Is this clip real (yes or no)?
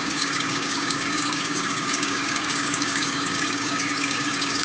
no